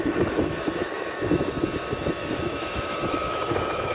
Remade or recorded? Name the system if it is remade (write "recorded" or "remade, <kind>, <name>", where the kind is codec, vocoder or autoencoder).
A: remade, autoencoder, DAC-VAE